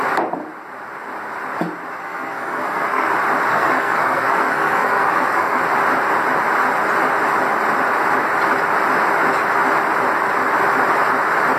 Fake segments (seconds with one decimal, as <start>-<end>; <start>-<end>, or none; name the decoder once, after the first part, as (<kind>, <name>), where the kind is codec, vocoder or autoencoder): 2.0-3.1 (codec, SNAC); 3.5-5.6